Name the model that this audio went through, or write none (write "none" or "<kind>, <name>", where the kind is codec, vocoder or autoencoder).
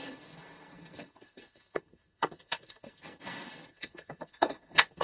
codec, SNAC